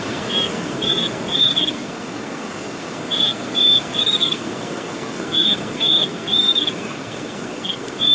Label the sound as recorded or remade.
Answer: remade